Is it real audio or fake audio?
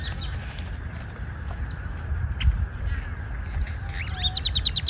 real